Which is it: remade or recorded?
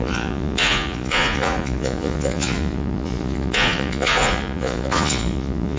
remade